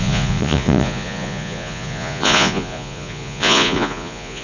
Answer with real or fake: fake